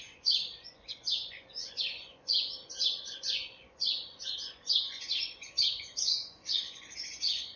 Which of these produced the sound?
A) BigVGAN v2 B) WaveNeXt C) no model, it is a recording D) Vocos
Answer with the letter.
D